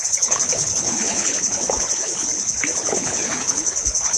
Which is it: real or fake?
fake